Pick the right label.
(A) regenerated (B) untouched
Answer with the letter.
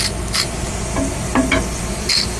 B